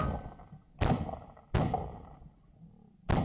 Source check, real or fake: real